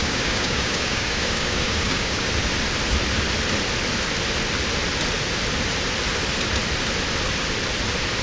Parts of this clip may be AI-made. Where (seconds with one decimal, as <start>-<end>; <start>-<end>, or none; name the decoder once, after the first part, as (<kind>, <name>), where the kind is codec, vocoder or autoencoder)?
0.0-2.3 (codec, DAC)